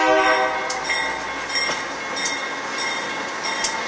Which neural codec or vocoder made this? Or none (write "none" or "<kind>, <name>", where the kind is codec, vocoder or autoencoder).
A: none